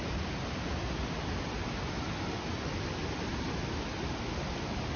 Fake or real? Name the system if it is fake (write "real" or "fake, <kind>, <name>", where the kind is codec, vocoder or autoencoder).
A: real